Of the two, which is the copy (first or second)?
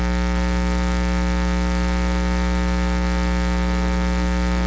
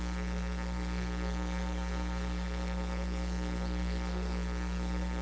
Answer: second